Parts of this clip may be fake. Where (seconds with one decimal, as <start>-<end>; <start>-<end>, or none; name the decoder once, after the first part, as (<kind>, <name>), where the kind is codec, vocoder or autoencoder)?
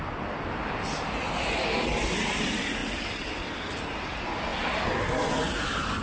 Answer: none